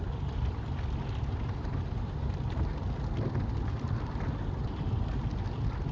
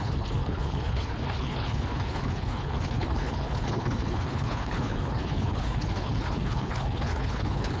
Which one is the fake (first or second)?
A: second